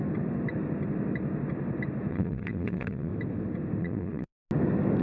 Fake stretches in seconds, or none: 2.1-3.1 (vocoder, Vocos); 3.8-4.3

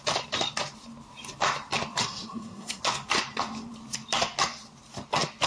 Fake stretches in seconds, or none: 2.0-2.8 (codec, SNAC)

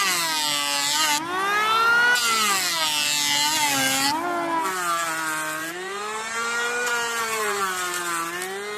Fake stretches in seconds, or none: 5.6-7.6 (vocoder, BigVGAN v2)

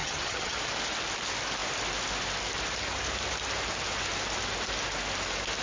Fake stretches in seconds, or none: 0.0-0.6 (vocoder, HiFi-GAN)

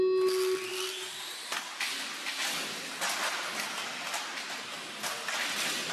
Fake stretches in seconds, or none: none

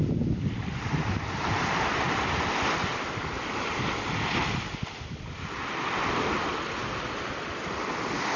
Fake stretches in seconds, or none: 1.5-2.5 (vocoder, BigVGAN v2)

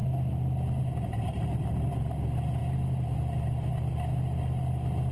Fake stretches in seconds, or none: none

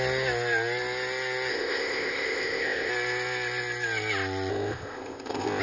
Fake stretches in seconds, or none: 1.5-2.9 (codec, ZipCodec); 4.5-5.6